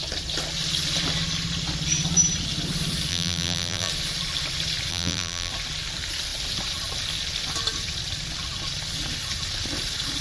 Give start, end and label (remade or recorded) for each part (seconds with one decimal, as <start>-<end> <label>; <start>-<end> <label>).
0.0-3.1 recorded; 3.1-3.9 remade; 3.9-4.9 recorded; 4.9-5.5 remade; 5.5-10.2 recorded